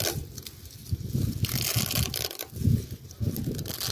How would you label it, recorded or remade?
recorded